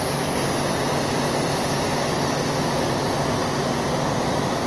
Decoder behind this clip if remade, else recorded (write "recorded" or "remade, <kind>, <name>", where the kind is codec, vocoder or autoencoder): recorded